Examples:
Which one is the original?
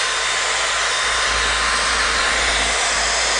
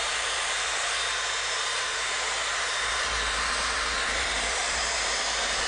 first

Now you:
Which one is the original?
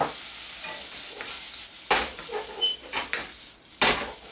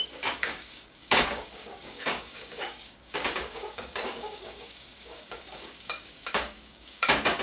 first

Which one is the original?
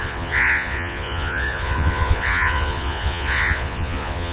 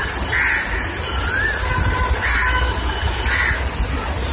second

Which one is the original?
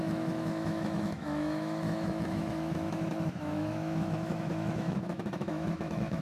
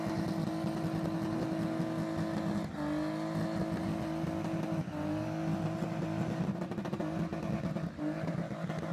second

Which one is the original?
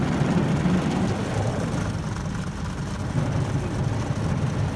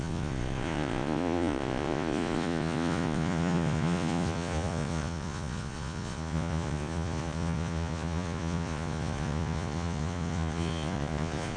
first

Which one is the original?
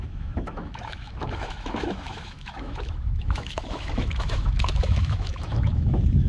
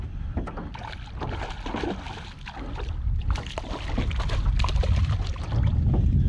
second